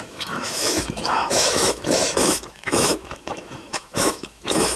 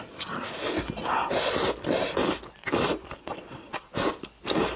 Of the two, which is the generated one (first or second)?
first